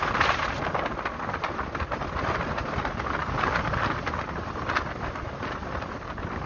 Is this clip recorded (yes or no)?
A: yes